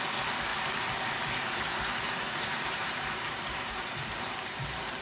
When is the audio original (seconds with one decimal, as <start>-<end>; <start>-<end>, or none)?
0.0-0.5; 1.0-1.7